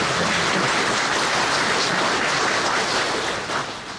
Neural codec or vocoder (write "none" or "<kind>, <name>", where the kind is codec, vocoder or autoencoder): none